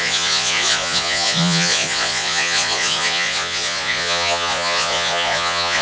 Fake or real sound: fake